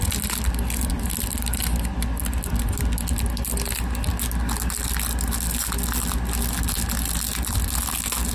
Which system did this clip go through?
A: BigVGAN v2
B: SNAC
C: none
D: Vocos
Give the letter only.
C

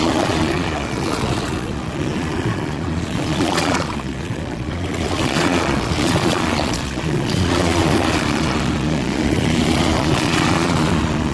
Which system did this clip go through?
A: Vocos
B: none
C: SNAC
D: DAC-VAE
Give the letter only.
A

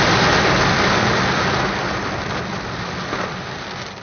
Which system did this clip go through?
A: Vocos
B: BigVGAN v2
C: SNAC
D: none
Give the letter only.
D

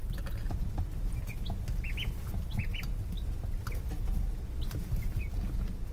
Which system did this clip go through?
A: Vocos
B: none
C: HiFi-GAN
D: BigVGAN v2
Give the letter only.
B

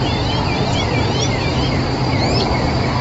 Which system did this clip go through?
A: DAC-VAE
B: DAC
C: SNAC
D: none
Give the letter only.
D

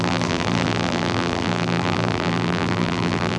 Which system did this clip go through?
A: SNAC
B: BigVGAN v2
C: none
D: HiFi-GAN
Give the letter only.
B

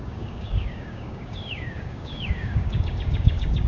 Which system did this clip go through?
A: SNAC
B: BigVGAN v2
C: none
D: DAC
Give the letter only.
D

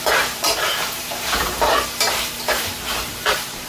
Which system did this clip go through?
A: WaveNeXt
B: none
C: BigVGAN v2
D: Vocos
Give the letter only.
C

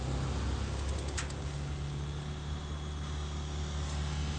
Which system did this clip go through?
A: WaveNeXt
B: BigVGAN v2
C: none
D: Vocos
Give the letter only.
C